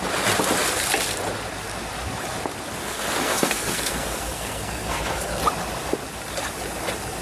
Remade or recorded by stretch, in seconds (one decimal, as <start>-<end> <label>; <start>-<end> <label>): 0.0-2.8 recorded; 2.8-5.4 remade; 5.4-7.2 recorded